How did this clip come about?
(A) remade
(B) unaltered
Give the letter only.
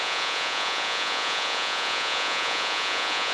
A